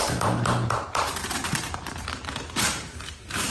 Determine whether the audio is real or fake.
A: fake